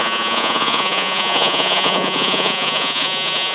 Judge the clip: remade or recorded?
remade